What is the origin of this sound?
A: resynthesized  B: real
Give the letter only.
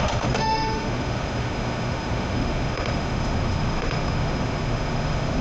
A